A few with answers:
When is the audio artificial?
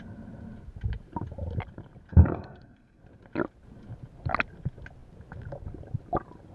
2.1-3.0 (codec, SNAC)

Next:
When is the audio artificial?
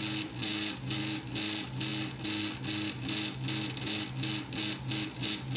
none